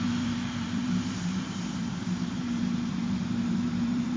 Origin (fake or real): fake